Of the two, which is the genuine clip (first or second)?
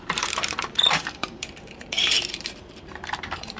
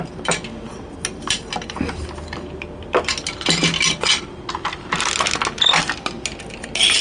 second